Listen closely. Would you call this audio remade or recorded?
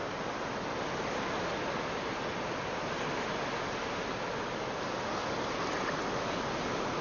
recorded